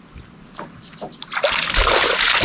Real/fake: real